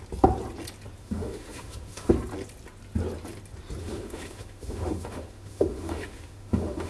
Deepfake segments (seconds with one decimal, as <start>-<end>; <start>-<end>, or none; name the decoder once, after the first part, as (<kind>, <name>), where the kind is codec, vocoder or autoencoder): 1.0-2.1 (autoencoder, DAC-VAE); 3.8-6.9